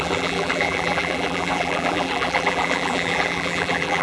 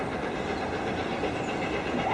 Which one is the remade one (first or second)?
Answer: first